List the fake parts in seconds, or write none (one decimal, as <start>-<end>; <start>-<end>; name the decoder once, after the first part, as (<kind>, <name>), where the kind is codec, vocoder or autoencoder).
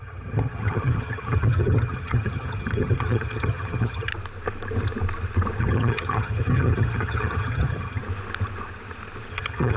0.0-4.1 (vocoder, HiFi-GAN); 5.6-8.0; 9.3-9.8